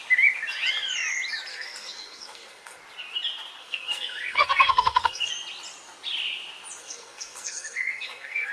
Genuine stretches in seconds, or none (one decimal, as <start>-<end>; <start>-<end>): 0.0-1.5; 2.8-3.6; 5.3-6.8